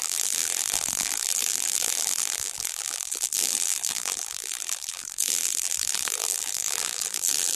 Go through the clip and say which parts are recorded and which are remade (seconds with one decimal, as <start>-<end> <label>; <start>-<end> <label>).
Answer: 0.0-7.6 remade

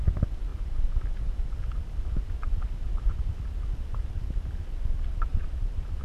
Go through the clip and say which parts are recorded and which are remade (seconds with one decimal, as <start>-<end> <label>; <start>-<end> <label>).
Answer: 0.0-5.3 recorded; 5.3-6.0 remade

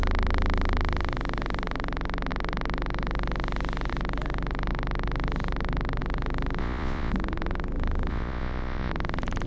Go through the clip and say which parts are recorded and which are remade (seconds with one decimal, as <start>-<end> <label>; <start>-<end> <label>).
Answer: 0.0-6.6 recorded; 6.6-7.1 remade; 7.1-8.1 recorded; 8.1-8.9 remade; 8.9-9.5 recorded